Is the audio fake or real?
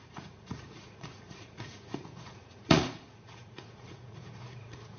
fake